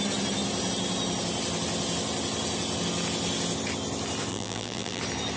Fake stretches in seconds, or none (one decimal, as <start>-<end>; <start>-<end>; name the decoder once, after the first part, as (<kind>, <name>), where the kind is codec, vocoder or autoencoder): 4.3-5.0 (vocoder, BigVGAN v2)